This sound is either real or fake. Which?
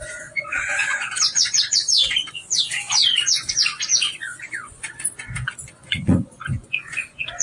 fake